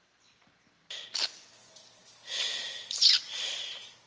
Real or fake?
real